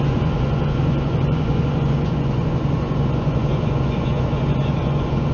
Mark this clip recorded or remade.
remade